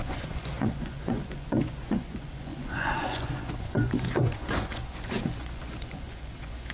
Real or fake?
fake